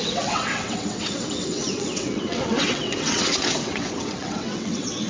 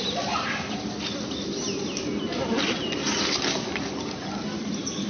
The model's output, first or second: first